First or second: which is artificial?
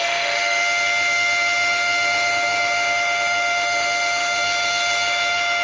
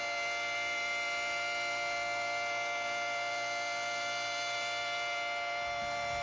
first